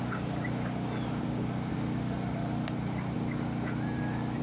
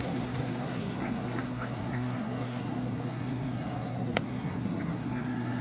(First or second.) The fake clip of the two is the second